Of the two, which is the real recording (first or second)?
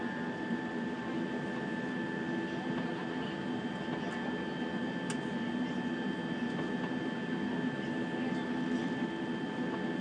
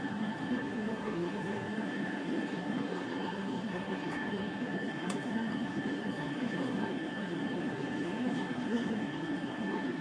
first